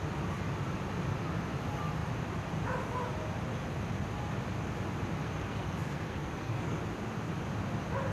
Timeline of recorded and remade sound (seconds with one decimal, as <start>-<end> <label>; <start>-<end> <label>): 0.0-5.2 recorded; 5.2-6.8 remade; 6.8-8.1 recorded